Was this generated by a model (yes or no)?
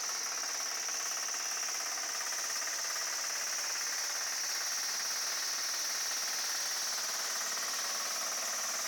no